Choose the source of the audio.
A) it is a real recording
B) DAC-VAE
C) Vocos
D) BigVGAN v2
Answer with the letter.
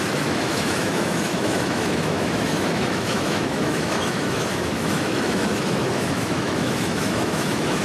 B